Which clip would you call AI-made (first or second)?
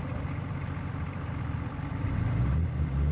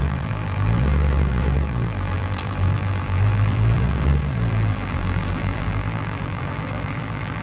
second